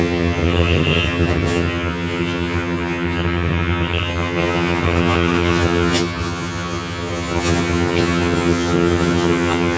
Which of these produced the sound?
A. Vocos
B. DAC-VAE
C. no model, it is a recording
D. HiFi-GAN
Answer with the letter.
D